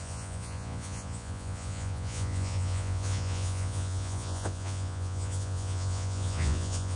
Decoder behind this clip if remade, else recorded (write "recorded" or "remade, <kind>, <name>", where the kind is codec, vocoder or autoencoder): remade, vocoder, Vocos